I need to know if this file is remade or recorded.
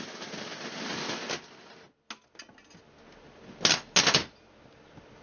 recorded